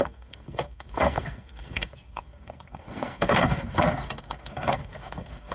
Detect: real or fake fake